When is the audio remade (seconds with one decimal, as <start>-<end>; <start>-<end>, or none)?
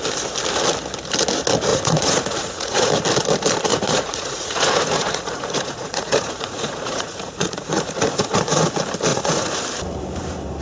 1.7-2.9; 3.7-8.7; 9.1-9.6